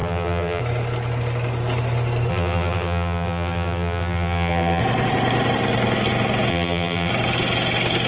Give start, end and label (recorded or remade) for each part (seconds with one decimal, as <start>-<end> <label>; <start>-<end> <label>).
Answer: 0.0-0.6 remade; 0.6-2.3 recorded; 2.3-4.8 remade; 4.8-6.5 recorded; 6.5-7.1 remade; 7.1-8.1 recorded